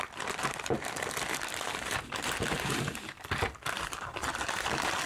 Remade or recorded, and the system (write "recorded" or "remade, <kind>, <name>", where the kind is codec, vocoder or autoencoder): remade, vocoder, BigVGAN v2